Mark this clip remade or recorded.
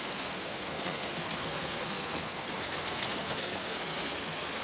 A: remade